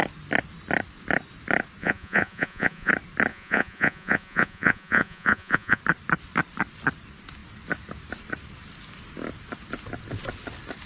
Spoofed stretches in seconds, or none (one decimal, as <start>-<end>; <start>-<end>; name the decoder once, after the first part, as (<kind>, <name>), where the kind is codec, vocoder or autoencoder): 1.8-2.9 (vocoder, Vocos); 3.3-5.8